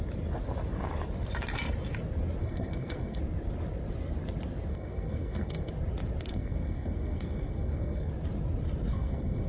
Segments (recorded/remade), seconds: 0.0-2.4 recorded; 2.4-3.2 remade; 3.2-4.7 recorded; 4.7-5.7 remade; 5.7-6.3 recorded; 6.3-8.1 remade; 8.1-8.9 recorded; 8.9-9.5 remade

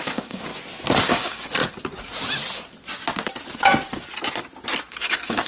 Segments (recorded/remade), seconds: 0.0-0.5 remade; 0.5-1.1 recorded; 1.1-1.6 remade; 1.6-4.9 recorded; 4.9-5.5 remade

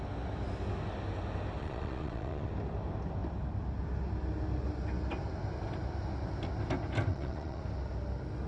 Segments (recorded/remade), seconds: 0.0-1.6 recorded; 1.6-2.5 remade; 2.5-7.1 recorded; 7.1-7.6 remade; 7.6-8.5 recorded

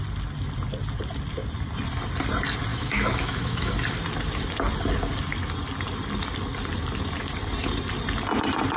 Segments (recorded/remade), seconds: 0.0-2.7 recorded; 2.7-3.7 remade; 3.7-8.8 recorded

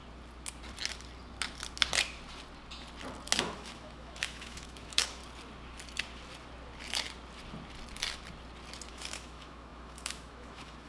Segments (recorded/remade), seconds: 0.0-3.4 recorded; 3.4-5.2 remade; 5.2-8.9 recorded; 8.9-10.9 remade

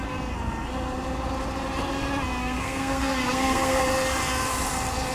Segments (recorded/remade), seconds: 0.0-2.4 recorded; 2.4-3.8 remade; 3.8-5.1 recorded

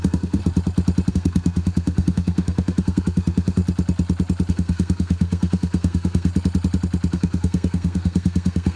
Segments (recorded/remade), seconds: 0.0-0.4 remade; 0.4-1.1 recorded; 1.1-3.6 remade; 3.6-4.5 recorded; 4.5-6.3 remade; 6.3-7.1 recorded; 7.1-8.8 remade